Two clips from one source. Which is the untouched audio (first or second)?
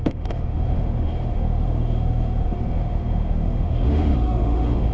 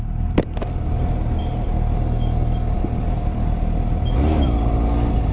second